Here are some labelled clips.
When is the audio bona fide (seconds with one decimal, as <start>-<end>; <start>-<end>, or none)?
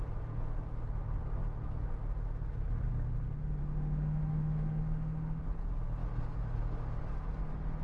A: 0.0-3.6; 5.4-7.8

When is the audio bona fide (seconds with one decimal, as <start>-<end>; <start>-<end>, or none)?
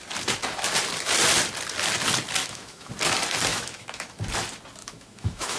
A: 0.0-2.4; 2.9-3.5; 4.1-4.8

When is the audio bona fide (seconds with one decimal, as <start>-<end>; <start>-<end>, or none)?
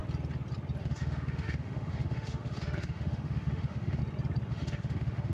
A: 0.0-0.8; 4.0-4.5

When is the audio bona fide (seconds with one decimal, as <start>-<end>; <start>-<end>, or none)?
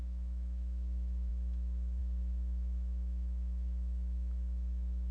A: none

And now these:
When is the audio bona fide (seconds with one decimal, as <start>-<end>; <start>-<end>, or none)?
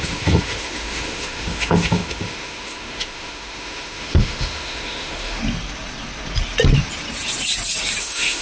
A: 5.4-8.0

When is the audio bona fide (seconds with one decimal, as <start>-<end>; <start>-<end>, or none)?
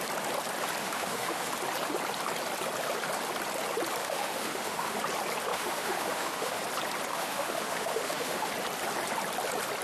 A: 0.0-0.8; 1.5-4.0; 5.0-5.5; 6.6-7.1; 8.5-9.8